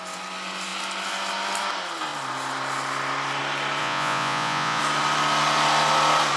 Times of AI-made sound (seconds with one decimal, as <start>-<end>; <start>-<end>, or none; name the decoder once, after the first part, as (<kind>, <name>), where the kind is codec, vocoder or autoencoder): 3.8-4.8 (vocoder, Vocos)